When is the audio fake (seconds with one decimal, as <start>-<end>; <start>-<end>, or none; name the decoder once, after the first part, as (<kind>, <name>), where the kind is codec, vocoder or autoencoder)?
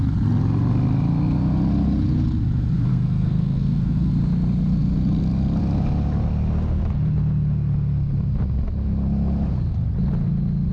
2.9-4.1 (codec, SNAC)